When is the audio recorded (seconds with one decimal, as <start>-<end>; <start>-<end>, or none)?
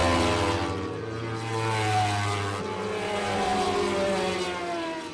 0.0-5.1